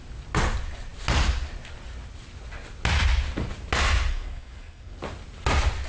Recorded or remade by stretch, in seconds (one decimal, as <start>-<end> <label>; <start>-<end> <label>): 0.0-4.1 recorded; 4.1-5.0 remade; 5.0-5.9 recorded